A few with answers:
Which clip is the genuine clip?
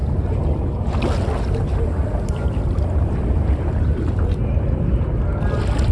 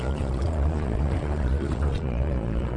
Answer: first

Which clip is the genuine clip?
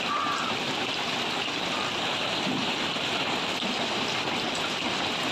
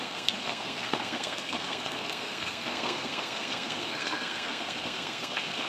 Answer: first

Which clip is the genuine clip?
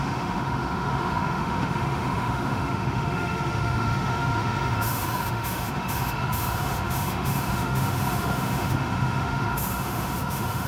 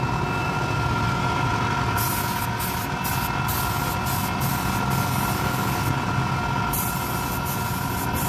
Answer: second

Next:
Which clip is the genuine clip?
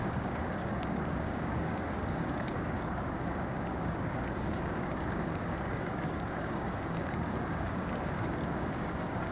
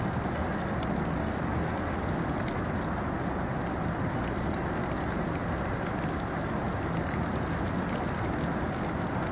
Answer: second